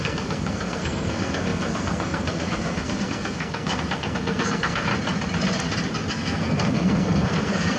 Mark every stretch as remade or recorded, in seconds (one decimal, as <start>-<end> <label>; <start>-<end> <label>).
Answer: 0.0-4.9 remade; 4.9-6.1 recorded; 6.1-7.8 remade